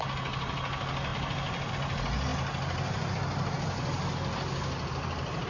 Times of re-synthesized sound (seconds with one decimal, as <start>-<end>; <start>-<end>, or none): none